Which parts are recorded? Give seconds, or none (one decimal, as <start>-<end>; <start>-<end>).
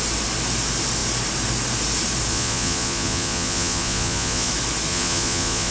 0.0-2.3; 4.5-4.9